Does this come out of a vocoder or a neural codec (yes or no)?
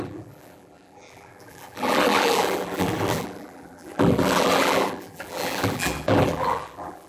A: yes